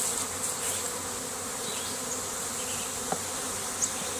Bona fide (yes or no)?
yes